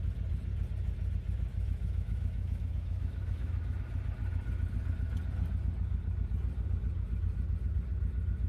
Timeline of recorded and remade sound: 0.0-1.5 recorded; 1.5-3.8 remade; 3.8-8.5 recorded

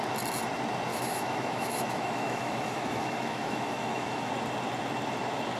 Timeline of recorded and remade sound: 0.0-0.9 recorded; 0.9-4.3 remade; 4.3-5.6 recorded

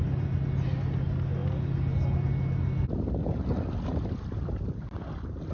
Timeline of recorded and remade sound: 0.0-5.5 recorded

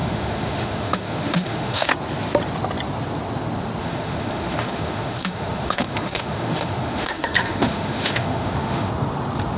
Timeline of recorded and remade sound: 0.0-1.9 remade; 1.9-3.8 recorded; 3.8-8.9 remade; 8.9-9.6 recorded

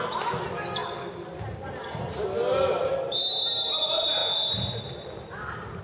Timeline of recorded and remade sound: 0.0-5.8 recorded

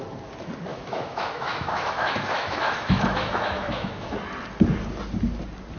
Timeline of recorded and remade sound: 0.0-0.7 recorded; 0.7-4.2 remade; 4.2-5.8 recorded